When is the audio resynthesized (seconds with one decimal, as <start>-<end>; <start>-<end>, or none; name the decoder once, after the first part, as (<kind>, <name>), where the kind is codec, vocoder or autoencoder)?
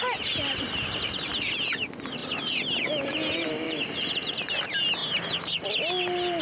none